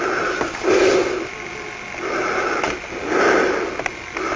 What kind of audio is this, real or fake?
real